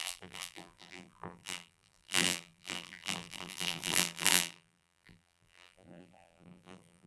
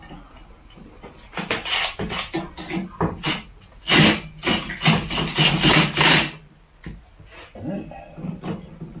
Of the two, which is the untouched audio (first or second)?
second